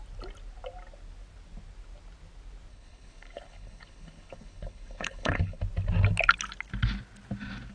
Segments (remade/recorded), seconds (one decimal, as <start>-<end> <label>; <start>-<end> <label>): 0.0-2.7 recorded; 2.7-5.6 remade; 5.6-7.7 recorded